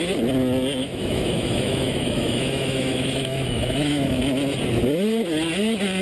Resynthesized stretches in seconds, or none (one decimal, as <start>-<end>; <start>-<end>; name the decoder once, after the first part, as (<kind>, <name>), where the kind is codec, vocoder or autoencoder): 0.8-4.2 (autoencoder, DAC-VAE)